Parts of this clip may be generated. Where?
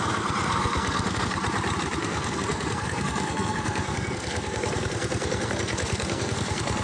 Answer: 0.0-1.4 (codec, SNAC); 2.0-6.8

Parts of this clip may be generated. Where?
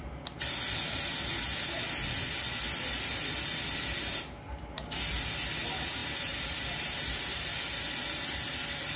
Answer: 6.0-7.5 (vocoder, BigVGAN v2)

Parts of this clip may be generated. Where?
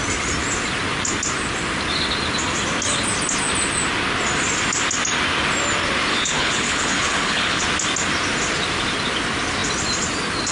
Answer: 6.1-7.6 (codec, HILCodec)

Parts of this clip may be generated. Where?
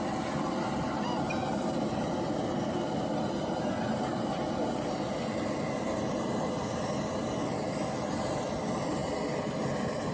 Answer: none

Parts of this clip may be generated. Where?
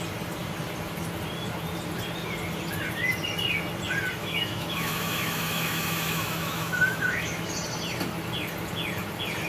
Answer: 4.2-7.5 (autoencoder, DAC-VAE)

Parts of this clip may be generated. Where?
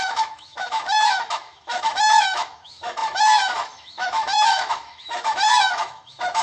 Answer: 0.0-6.4 (autoencoder, DAC-VAE)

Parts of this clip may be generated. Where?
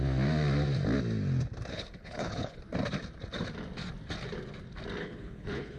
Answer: 1.7-2.6 (codec, HILCodec); 5.0-5.8